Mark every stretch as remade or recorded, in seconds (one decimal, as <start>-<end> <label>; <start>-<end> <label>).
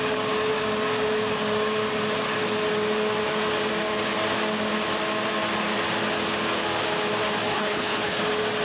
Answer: 0.0-7.5 recorded; 7.5-8.2 remade; 8.2-8.6 recorded